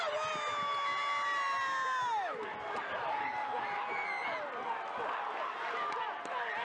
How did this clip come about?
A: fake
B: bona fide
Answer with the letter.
B